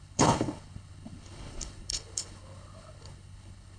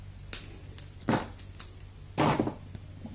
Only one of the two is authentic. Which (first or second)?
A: second